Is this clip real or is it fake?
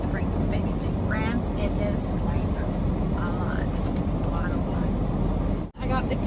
real